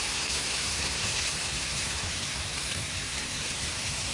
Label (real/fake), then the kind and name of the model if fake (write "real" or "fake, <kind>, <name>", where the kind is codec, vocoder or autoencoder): fake, codec, SNAC